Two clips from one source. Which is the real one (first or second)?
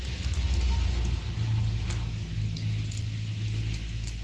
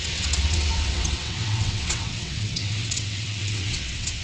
first